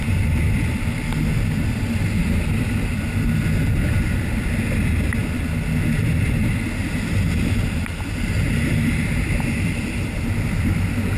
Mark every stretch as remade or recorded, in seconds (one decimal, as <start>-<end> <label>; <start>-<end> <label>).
0.0-11.2 recorded